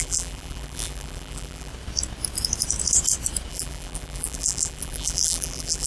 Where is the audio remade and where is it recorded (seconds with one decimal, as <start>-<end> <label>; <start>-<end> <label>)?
0.0-1.7 remade; 1.7-3.5 recorded; 3.5-5.9 remade